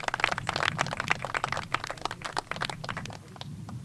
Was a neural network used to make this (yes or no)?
no